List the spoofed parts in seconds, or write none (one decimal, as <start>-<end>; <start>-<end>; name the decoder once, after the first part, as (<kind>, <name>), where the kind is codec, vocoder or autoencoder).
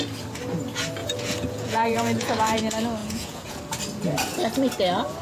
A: 1.0-2.6 (vocoder, Vocos); 3.0-3.6